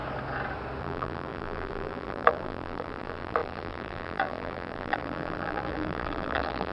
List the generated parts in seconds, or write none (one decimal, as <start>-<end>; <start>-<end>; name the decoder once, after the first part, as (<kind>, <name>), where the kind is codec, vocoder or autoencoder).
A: 0.8-6.7 (vocoder, BigVGAN v2)